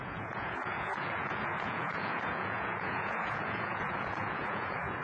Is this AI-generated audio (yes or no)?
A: yes